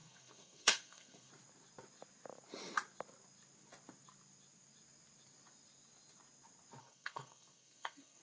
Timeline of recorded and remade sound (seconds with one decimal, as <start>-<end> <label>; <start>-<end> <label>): 0.0-1.3 remade; 1.3-6.8 recorded; 6.8-8.2 remade